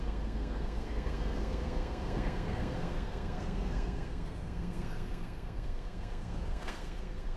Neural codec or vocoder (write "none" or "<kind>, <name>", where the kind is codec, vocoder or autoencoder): codec, SNAC